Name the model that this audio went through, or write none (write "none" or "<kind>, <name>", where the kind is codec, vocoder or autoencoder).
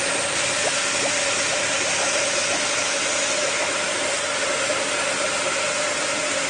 none